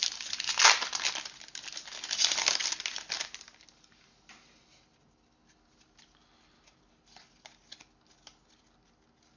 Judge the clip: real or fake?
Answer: real